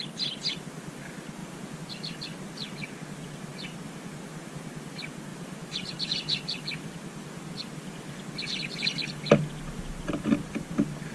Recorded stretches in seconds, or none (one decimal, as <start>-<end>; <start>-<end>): 0.0-5.3; 8.3-11.1